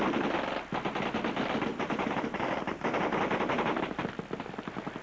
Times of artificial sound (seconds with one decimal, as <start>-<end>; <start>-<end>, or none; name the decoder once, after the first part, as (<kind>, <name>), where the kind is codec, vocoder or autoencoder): 1.7-4.0 (vocoder, BigVGAN v2)